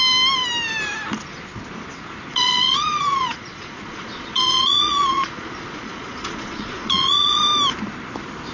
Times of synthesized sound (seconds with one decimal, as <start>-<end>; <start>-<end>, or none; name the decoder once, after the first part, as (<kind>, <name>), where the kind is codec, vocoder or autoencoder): 2.3-7.4 (vocoder, Vocos)